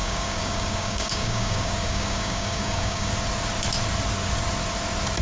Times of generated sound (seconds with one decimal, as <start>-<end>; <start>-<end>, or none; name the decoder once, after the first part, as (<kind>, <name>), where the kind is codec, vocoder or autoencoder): 0.0-3.1 (codec, DAC)